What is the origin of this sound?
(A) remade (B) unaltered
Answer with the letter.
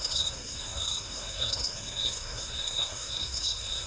A